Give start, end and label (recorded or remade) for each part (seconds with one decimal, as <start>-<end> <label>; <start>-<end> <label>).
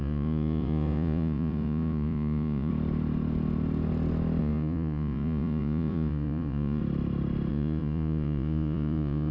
0.0-2.7 remade; 2.7-4.4 recorded; 4.4-6.8 remade; 6.8-7.5 recorded; 7.5-9.3 remade